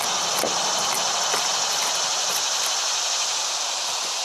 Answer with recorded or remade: recorded